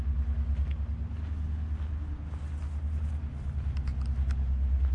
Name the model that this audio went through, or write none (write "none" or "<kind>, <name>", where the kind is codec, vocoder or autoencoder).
none